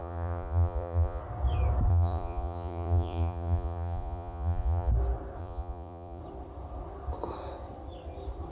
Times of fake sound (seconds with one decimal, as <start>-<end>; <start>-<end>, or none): 0.0-1.2; 1.9-4.9; 5.4-6.2